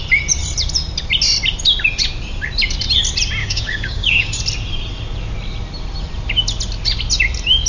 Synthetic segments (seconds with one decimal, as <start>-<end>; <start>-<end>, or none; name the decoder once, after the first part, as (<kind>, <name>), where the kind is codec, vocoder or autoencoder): 3.4-4.4 (codec, DAC)